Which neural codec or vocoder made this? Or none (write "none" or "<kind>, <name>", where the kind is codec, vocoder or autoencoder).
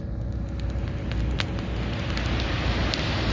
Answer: none